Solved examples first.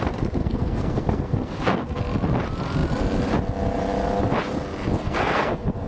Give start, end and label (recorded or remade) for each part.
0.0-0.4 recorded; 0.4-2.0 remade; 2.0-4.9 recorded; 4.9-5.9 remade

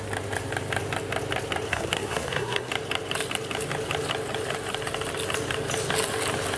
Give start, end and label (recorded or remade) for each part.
0.0-1.7 recorded; 1.7-2.7 remade; 2.7-6.6 recorded

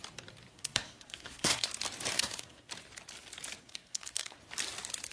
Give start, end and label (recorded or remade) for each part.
0.0-0.5 recorded; 0.5-1.7 remade; 1.7-2.1 recorded; 2.1-2.7 remade; 2.7-3.6 recorded; 3.6-4.4 remade; 4.4-5.1 recorded

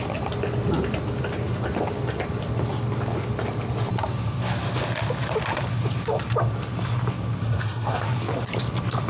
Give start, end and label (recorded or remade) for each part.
0.0-7.4 recorded; 7.4-8.0 remade; 8.0-9.1 recorded